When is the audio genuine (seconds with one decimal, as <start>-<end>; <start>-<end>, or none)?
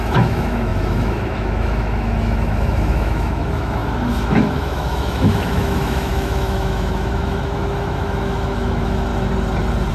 9.1-9.9